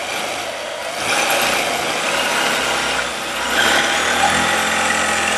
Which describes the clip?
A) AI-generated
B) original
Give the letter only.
B